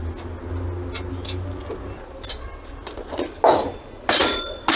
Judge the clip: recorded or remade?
recorded